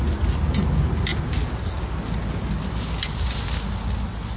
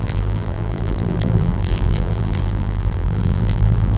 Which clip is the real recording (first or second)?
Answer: first